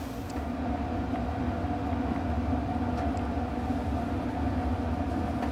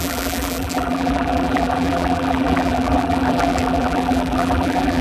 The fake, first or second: second